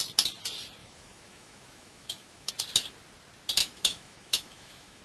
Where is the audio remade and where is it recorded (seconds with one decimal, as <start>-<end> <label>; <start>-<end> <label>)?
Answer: 0.0-0.8 recorded; 0.8-2.5 remade; 2.5-3.6 recorded; 3.6-5.0 remade

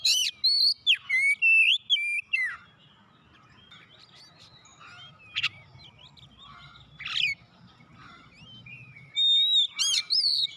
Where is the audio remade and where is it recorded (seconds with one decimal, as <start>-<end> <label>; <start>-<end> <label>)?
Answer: 0.0-10.6 recorded

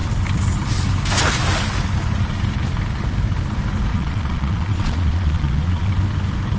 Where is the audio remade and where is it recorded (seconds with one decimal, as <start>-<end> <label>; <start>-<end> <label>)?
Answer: 0.0-3.9 recorded; 3.9-5.9 remade; 5.9-6.6 recorded

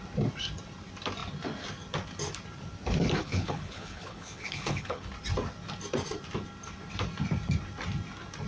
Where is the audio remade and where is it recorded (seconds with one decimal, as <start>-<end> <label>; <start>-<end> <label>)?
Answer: 0.0-3.2 recorded; 3.2-5.1 remade; 5.1-8.5 recorded

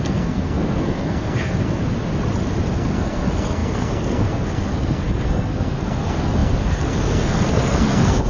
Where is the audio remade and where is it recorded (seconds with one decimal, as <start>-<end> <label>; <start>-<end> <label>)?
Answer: 0.0-1.8 remade; 1.8-2.7 recorded; 2.7-8.3 remade

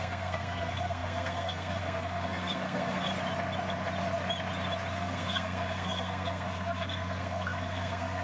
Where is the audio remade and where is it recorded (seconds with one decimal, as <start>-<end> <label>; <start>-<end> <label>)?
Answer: 0.0-3.1 remade; 3.1-4.9 recorded; 4.9-8.2 remade